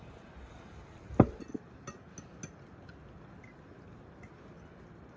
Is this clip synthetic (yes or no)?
no